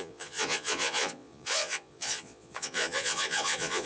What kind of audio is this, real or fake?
fake